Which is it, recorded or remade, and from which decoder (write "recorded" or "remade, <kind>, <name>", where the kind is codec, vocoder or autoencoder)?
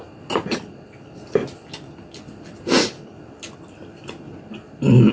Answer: recorded